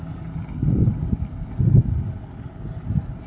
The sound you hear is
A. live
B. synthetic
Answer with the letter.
A